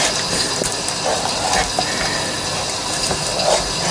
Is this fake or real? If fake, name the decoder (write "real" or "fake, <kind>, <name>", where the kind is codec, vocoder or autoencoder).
real